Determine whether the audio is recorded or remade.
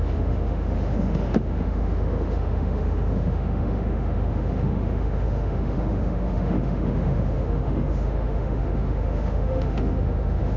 remade